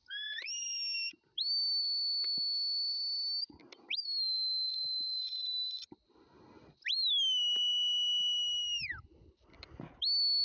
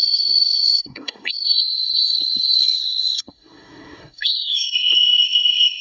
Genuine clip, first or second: first